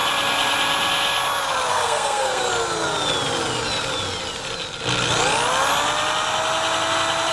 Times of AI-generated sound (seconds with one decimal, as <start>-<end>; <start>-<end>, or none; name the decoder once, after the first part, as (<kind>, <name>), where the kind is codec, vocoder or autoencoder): 1.7-2.5 (codec, SNAC)